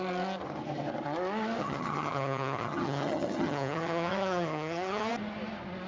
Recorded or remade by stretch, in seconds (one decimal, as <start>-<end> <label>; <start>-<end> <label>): 0.0-1.6 recorded; 1.6-5.1 remade; 5.1-5.9 recorded